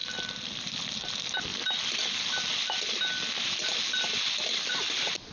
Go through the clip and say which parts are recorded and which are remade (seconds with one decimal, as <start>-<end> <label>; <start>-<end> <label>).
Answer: 0.0-5.3 recorded